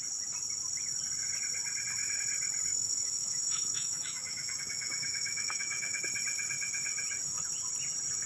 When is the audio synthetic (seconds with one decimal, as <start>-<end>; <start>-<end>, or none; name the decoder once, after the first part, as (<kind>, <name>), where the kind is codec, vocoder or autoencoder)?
2.7-6.0 (autoencoder, DAC-VAE)